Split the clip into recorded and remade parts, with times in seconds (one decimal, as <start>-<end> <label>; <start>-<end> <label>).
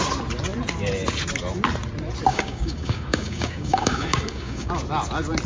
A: 0.0-2.3 recorded; 2.3-4.7 remade; 4.7-5.5 recorded